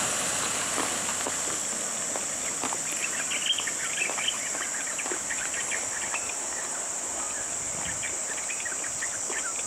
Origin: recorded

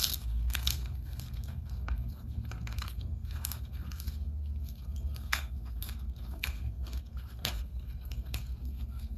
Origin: remade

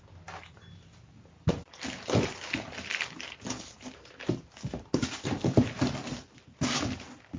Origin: recorded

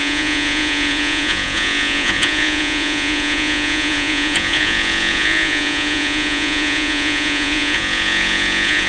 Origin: remade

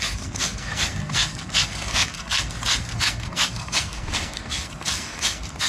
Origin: remade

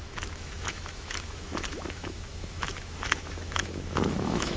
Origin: remade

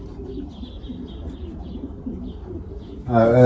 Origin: recorded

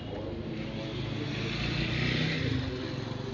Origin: recorded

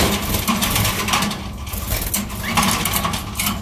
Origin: recorded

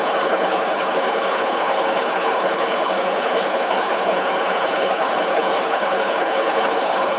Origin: remade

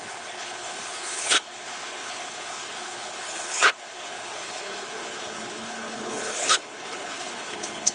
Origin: remade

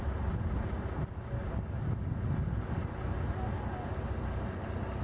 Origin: recorded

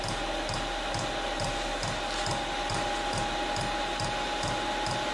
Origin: recorded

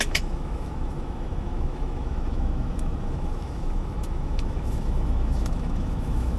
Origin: remade